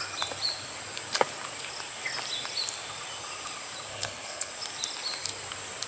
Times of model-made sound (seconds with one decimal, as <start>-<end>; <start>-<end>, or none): 3.9-4.5